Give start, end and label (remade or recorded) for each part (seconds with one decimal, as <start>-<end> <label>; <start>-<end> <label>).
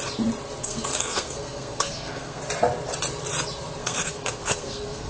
0.0-0.6 recorded; 0.6-2.4 remade; 2.4-3.8 recorded; 3.8-5.1 remade